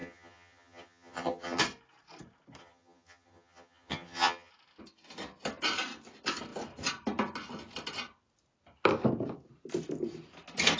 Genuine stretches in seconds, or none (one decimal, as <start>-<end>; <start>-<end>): 1.6-2.6; 4.5-10.8